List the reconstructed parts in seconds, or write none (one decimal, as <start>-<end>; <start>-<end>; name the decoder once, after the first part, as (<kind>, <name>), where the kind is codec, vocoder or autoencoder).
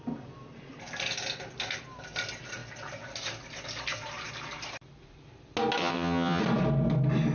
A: 5.8-6.4 (vocoder, HiFi-GAN)